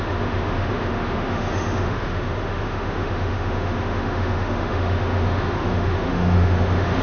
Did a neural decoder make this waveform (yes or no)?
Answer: yes